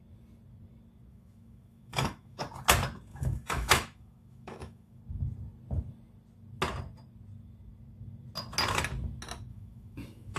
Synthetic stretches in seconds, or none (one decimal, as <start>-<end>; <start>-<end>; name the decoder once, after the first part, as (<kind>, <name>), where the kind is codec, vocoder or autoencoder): 1.1-2.4 (autoencoder, DAC-VAE); 3.1-5.0; 9.5-10.4

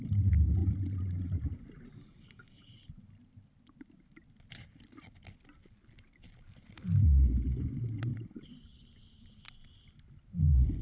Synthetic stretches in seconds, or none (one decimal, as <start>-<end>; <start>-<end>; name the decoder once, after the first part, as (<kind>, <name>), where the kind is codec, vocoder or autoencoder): none

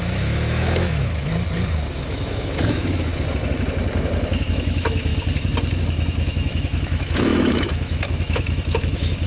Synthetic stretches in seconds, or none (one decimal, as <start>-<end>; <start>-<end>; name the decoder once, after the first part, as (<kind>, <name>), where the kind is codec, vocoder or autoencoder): 0.0-1.3 (autoencoder, DAC-VAE); 1.9-3.1; 4.5-5.1; 5.8-9.3

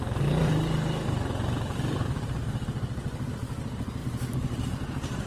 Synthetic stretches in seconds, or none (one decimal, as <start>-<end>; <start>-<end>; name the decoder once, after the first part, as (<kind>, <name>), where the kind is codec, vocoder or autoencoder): none

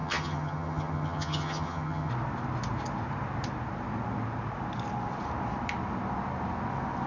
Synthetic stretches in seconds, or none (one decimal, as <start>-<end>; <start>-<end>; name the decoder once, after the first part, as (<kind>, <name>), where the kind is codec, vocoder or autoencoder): 0.0-2.1 (vocoder, HiFi-GAN)

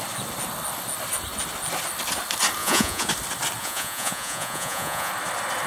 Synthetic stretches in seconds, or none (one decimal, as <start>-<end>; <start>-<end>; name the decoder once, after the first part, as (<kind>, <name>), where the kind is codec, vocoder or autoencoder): 2.6-3.1 (vocoder, Vocos); 3.6-5.1

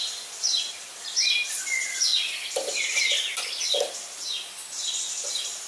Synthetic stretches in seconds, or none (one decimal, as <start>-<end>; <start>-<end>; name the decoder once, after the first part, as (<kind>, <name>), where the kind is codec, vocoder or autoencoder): none